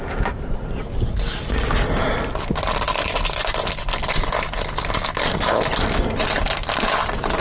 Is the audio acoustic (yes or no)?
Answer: yes